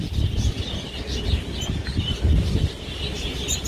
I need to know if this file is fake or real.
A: real